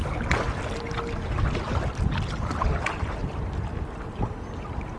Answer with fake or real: real